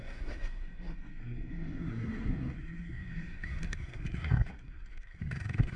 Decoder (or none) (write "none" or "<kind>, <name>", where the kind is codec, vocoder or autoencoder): codec, SNAC